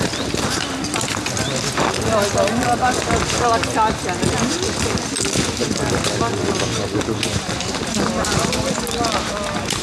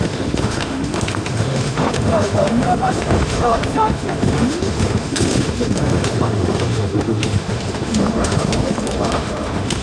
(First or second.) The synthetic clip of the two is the second